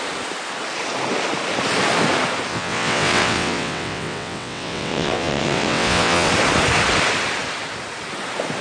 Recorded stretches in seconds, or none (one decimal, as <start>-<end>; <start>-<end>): 0.0-2.5; 6.3-8.6